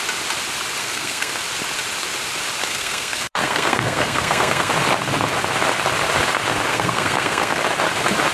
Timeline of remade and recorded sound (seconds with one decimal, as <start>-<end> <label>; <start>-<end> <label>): 0.0-0.8 recorded; 0.8-1.3 remade; 1.3-2.7 recorded; 2.7-4.7 remade; 4.7-6.7 recorded; 6.7-7.6 remade; 7.6-8.3 recorded

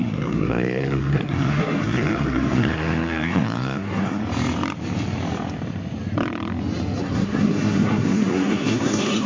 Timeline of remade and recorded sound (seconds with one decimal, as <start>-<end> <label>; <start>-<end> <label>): 0.0-4.2 remade; 4.2-7.0 recorded; 7.0-9.3 remade

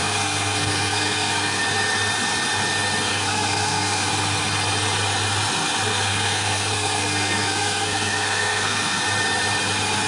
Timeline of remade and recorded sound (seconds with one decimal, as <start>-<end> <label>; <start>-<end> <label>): 0.0-1.6 remade; 1.6-3.1 recorded; 3.1-4.1 remade; 4.1-5.9 recorded; 5.9-9.0 remade; 9.0-10.1 recorded

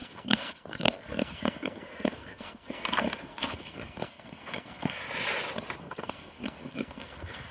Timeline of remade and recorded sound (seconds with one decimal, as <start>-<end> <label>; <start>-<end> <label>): 0.0-5.0 remade; 5.0-5.8 recorded; 5.8-7.5 remade

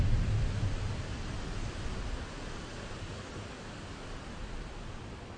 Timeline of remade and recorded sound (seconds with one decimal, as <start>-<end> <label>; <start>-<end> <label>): 0.0-5.4 recorded